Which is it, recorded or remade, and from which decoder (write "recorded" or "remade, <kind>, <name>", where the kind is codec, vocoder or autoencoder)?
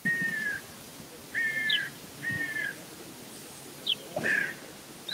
recorded